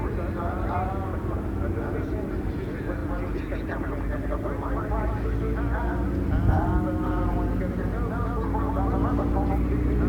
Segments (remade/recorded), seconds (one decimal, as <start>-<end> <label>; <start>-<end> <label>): 0.0-10.1 recorded